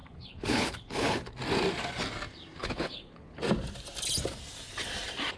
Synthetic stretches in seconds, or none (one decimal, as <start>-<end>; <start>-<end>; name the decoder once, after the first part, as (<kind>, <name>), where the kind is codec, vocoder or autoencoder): 0.0-1.3 (codec, HILCodec); 2.6-3.4